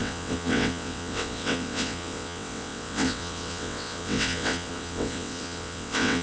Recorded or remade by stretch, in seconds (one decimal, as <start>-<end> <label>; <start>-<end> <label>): 0.0-6.2 remade